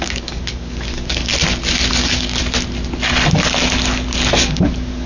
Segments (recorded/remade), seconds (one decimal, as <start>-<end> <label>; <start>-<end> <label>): 0.0-1.3 remade; 1.3-1.9 recorded; 1.9-2.4 remade; 2.4-4.3 recorded; 4.3-5.1 remade